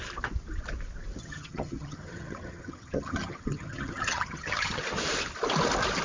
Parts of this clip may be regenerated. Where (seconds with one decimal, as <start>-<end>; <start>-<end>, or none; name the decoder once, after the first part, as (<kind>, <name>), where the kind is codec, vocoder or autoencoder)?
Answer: 1.2-4.8 (vocoder, HiFi-GAN)